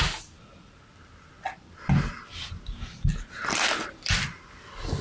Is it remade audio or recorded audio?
recorded